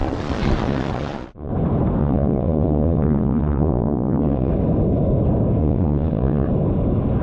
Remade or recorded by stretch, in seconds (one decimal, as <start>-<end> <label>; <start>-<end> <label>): 0.0-1.5 remade; 1.5-2.0 recorded; 2.0-4.5 remade; 4.5-5.6 recorded; 5.6-6.5 remade; 6.5-7.2 recorded

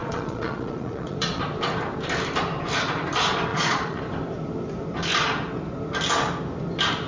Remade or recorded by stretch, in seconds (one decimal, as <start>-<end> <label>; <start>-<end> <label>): 0.0-1.4 remade; 1.4-3.5 recorded; 3.5-4.0 remade; 4.0-7.1 recorded

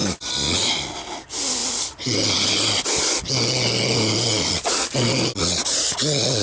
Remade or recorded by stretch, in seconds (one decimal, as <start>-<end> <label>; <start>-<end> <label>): 0.0-6.4 recorded

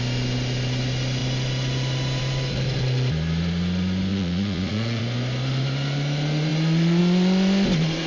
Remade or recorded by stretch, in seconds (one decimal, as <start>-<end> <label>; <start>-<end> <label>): 0.0-4.1 recorded; 4.1-5.0 remade; 5.0-8.1 recorded

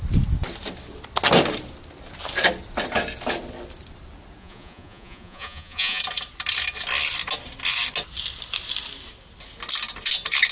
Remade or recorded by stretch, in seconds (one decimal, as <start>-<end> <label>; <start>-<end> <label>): 0.0-4.4 recorded; 4.4-6.0 remade; 6.0-10.5 recorded

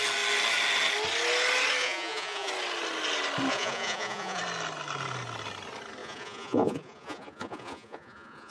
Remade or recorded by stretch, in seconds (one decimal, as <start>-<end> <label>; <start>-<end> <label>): 0.0-1.8 recorded; 1.8-2.5 remade; 2.5-3.5 recorded; 3.5-4.4 remade; 4.4-6.0 recorded; 6.0-8.5 remade